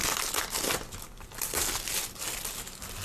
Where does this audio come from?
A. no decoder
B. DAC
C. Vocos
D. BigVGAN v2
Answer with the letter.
A